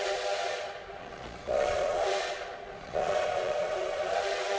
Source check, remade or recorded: remade